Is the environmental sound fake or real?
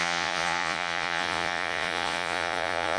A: fake